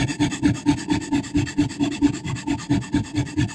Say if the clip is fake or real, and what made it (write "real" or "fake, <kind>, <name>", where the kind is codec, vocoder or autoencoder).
real